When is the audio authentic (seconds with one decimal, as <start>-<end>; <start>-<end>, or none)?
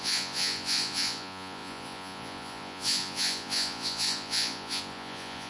none